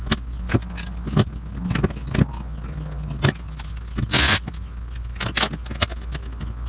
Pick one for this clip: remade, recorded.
recorded